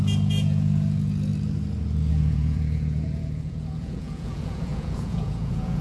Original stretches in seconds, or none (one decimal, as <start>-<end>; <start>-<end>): 1.3-2.1